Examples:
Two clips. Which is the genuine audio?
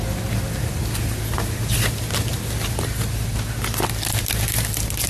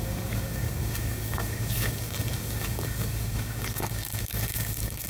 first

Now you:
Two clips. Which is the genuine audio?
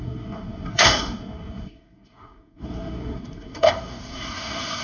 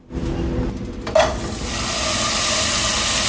second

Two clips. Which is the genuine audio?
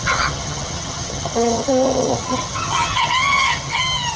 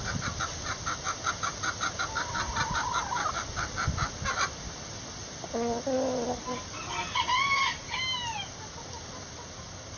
second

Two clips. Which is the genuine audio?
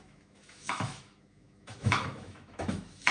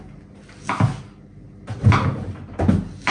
second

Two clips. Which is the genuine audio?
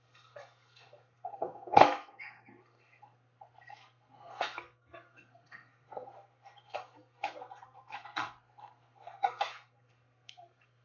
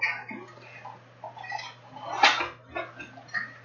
second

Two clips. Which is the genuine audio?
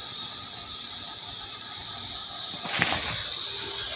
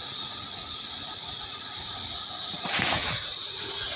first